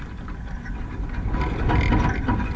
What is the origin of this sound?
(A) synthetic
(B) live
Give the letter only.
B